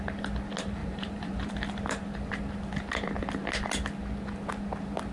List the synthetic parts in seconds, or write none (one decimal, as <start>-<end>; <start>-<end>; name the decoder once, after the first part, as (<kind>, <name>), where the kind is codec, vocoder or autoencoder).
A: 0.8-1.5 (vocoder, BigVGAN v2)